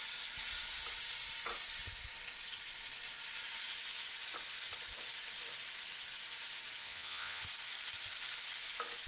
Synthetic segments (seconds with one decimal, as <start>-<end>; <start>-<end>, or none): 6.8-7.4